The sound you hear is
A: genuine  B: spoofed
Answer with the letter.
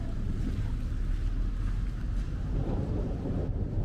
A